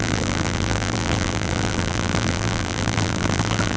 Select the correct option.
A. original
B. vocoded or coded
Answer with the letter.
B